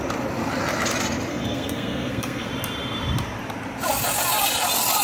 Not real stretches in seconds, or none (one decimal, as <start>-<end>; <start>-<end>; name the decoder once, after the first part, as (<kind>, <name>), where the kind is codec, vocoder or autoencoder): 1.3-2.5 (codec, SNAC)